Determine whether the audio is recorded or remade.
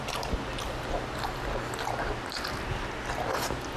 recorded